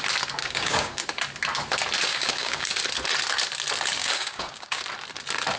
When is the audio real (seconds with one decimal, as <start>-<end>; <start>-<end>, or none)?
0.0-0.4; 1.0-2.1; 2.7-4.0; 4.8-5.6